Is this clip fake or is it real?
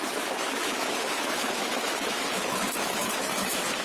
fake